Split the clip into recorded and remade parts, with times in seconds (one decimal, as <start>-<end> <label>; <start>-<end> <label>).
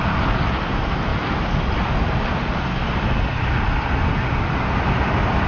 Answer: 0.0-5.5 recorded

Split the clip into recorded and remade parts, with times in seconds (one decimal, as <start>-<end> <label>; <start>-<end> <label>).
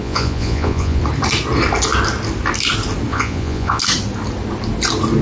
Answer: 0.0-1.0 remade; 1.0-3.1 recorded; 3.1-3.8 remade; 3.8-5.2 recorded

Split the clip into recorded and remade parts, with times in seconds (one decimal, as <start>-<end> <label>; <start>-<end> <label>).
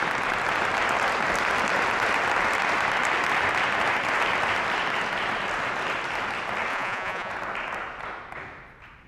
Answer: 0.0-6.7 recorded; 6.7-7.3 remade; 7.3-9.1 recorded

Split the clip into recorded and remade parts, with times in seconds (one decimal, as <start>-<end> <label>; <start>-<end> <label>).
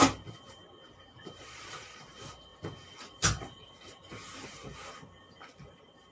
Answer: 0.0-1.4 recorded; 1.4-2.0 remade; 2.0-6.1 recorded